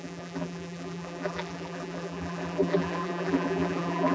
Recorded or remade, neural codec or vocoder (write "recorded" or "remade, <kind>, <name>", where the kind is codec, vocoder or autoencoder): remade, vocoder, BigVGAN v2